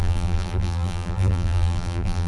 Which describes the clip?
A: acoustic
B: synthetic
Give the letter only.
B